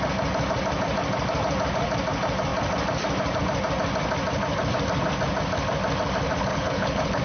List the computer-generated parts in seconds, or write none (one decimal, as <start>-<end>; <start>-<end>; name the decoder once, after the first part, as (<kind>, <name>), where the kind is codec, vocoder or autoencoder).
6.5-7.2 (codec, HILCodec)